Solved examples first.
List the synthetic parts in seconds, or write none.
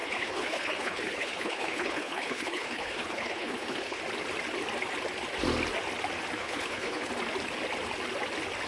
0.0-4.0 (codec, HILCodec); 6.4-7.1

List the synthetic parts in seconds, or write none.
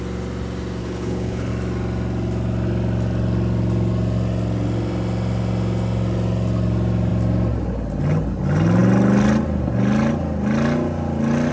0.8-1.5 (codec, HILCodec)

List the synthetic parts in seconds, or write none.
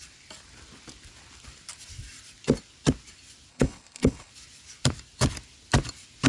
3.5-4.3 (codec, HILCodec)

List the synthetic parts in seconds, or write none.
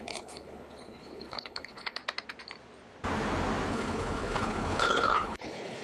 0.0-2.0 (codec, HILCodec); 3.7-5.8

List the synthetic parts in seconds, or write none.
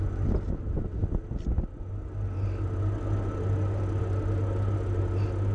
none